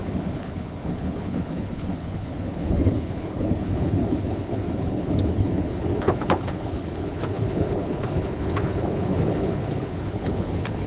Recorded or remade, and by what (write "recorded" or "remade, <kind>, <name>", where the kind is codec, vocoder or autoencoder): remade, codec, HILCodec